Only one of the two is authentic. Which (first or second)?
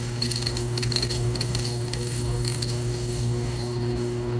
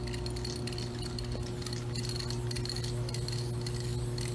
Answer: second